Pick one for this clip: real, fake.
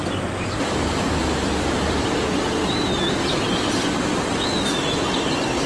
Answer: fake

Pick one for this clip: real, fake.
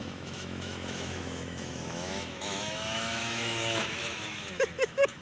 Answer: fake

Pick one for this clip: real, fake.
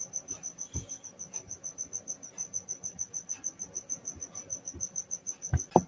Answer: real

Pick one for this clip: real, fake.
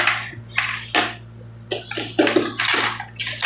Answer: real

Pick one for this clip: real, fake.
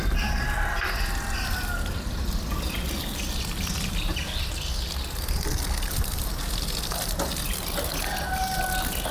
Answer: real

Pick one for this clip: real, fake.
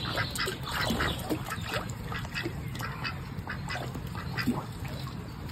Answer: real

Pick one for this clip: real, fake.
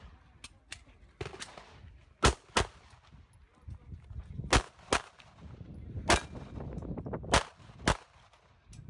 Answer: real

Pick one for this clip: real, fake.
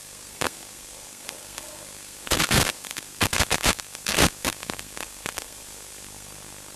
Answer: fake